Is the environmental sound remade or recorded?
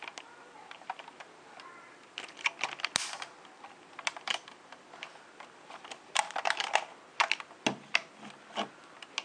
recorded